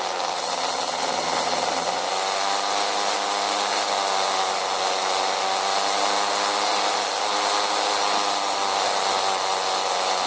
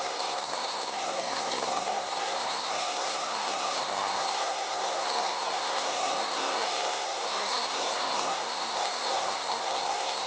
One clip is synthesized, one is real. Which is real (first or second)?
first